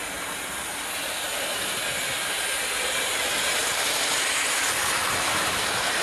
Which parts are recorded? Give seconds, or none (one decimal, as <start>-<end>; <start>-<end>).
0.0-3.6; 5.6-6.0